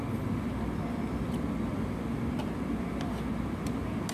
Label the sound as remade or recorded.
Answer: recorded